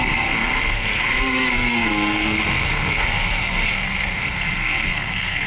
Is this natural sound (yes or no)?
no